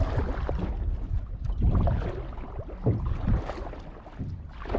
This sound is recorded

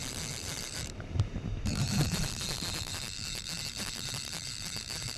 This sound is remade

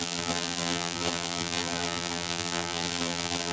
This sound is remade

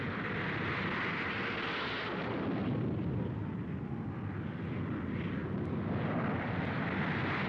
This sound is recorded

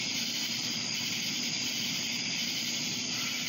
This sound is remade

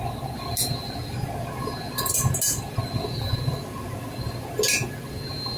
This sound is recorded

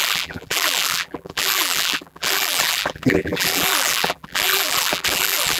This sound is remade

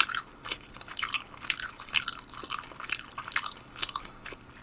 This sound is remade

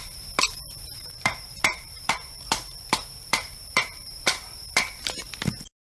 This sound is remade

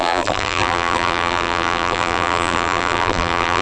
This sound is remade